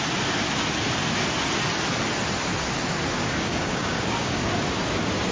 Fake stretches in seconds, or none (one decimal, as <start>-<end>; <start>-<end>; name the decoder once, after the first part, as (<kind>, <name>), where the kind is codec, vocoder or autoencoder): 3.2-4.5 (codec, DAC)